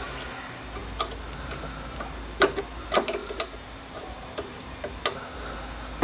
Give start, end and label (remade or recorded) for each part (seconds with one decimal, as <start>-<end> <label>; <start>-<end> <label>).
0.0-3.2 recorded; 3.2-4.7 remade; 4.7-6.0 recorded